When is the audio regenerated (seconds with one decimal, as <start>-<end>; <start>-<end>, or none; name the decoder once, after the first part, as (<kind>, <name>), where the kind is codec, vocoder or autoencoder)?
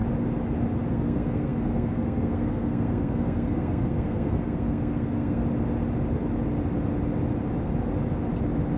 0.9-5.4 (codec, SNAC)